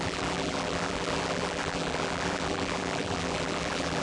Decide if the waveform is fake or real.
fake